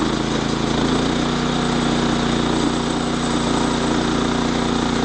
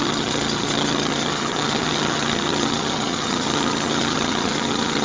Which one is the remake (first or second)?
second